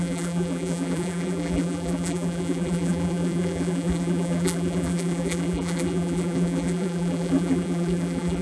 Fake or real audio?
fake